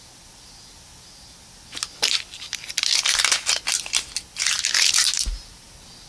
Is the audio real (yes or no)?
yes